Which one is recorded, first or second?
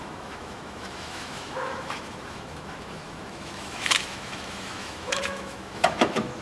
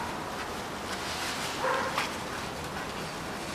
second